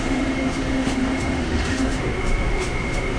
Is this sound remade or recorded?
remade